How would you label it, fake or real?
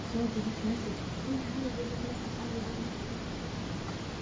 real